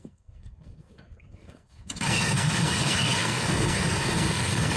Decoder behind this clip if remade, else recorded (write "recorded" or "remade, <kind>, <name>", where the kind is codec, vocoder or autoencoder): remade, codec, SNAC